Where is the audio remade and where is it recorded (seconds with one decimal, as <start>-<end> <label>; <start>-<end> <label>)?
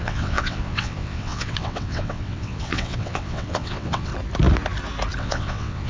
0.0-4.1 remade; 4.1-5.2 recorded; 5.2-5.9 remade